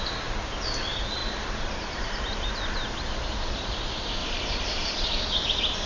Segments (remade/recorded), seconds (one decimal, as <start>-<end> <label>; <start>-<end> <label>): 0.0-1.2 recorded; 1.2-2.5 remade; 2.5-4.2 recorded; 4.2-5.2 remade; 5.2-5.9 recorded